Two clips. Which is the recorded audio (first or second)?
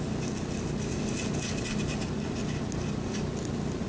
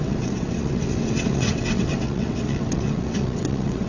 first